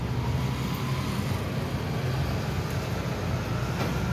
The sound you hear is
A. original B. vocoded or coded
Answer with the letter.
A